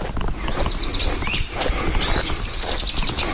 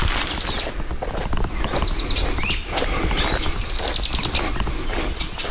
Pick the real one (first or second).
second